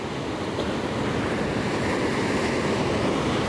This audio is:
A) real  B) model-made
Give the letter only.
A